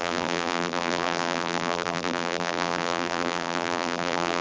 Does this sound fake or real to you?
fake